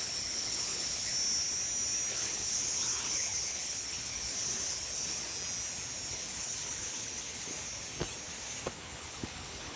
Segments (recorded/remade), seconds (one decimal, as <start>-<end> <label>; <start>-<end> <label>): 0.0-1.1 remade; 1.1-2.1 recorded; 2.1-5.3 remade; 5.3-6.1 recorded; 6.1-7.5 remade; 7.5-8.6 recorded; 8.6-9.8 remade